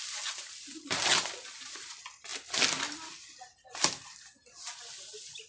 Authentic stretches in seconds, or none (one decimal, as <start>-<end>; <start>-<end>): 0.0-5.5